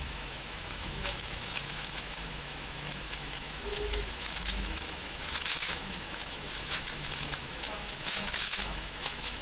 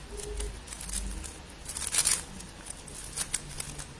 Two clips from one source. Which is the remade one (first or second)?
first